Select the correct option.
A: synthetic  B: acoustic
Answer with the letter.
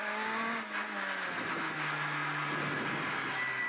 B